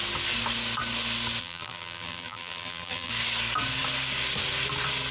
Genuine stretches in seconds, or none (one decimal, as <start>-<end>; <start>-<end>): 0.0-1.4; 3.1-5.1